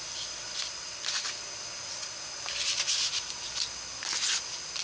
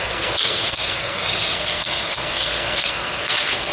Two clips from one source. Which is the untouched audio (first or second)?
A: first